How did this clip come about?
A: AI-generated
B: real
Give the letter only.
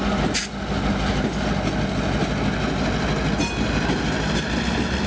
B